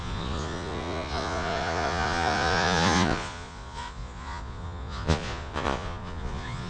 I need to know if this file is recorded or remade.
remade